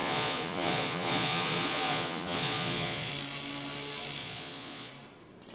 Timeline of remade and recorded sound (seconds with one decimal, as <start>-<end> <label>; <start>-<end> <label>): 0.0-3.1 remade; 3.1-4.2 recorded; 4.2-4.9 remade; 4.9-5.5 recorded